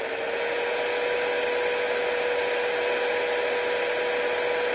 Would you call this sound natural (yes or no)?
yes